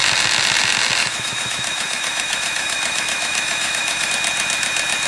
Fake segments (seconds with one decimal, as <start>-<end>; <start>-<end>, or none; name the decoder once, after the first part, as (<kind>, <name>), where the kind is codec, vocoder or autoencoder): 1.0-4.1 (autoencoder, DAC-VAE)